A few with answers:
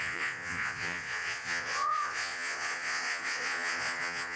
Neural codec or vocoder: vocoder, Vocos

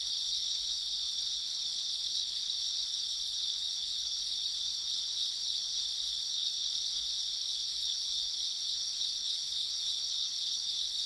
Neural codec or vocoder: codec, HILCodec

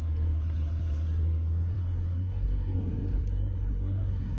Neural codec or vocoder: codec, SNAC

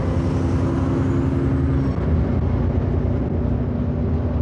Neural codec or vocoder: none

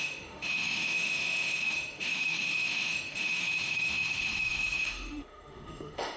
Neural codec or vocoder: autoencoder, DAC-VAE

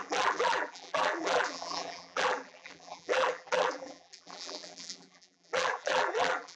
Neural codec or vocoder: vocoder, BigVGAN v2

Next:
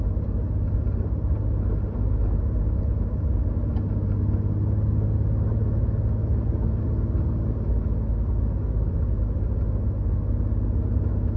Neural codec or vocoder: none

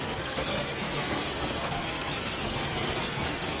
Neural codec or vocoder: codec, SNAC